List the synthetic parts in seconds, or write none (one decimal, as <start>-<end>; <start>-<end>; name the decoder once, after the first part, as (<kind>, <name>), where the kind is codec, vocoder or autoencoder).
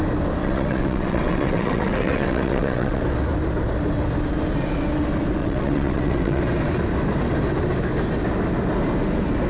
0.4-3.0 (vocoder, WaveNeXt); 5.4-6.4